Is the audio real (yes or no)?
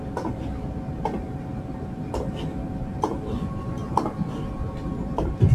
yes